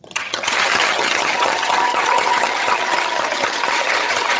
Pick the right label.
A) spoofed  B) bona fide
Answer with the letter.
A